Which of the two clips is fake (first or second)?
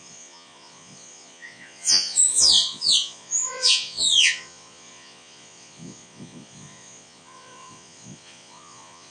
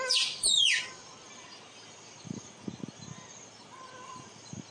first